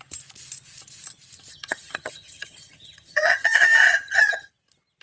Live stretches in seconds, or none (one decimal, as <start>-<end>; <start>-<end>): 0.0-1.5; 4.5-5.0